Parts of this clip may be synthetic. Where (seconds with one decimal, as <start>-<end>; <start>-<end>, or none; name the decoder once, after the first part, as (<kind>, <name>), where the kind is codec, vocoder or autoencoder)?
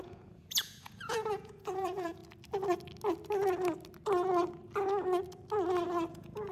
0.0-2.2 (vocoder, Vocos); 6.1-6.5